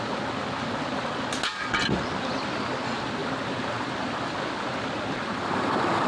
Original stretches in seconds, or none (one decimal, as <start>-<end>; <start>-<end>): 0.0-6.1